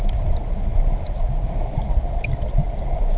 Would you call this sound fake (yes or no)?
no